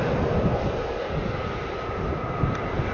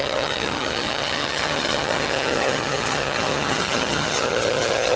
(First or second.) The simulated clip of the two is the second